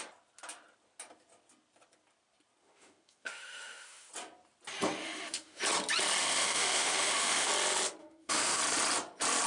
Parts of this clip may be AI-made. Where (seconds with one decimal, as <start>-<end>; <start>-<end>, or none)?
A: 2.6-4.1; 5.0-5.6; 6.2-7.5; 8.0-8.6